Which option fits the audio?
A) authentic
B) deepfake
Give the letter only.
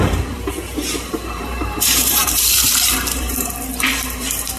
B